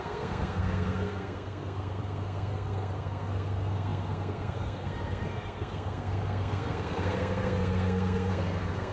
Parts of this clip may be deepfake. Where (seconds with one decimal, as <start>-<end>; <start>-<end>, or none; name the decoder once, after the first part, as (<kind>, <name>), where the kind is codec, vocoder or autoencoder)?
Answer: 0.0-8.9 (codec, SNAC)